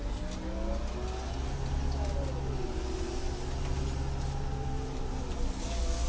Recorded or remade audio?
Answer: recorded